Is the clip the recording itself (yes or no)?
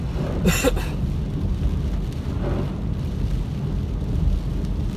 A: yes